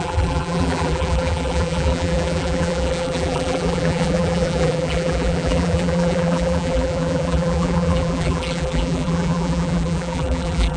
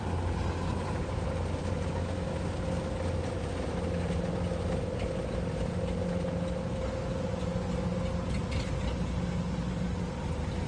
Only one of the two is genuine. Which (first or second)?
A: second